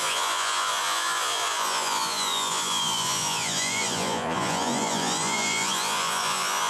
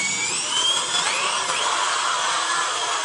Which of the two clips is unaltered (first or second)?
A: second